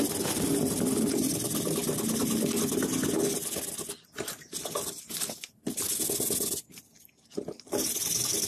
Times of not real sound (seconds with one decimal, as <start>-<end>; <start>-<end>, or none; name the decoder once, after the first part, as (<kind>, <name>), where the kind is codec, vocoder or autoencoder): none